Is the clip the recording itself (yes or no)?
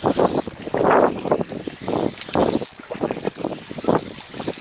yes